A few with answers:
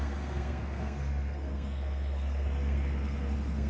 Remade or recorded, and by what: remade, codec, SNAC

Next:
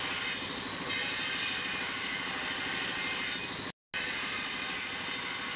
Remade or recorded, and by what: recorded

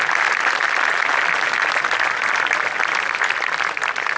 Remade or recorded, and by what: recorded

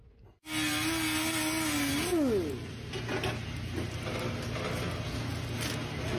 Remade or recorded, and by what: recorded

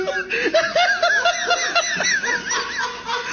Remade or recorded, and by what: recorded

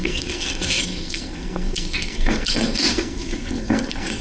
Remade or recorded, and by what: remade, codec, SNAC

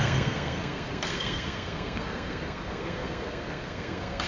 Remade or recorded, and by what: remade, codec, SNAC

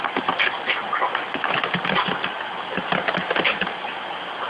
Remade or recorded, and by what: recorded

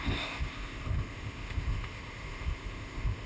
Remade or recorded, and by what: remade, codec, ZipCodec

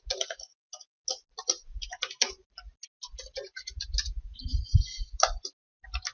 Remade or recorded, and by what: recorded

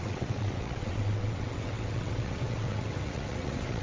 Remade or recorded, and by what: remade, vocoder, WaveNeXt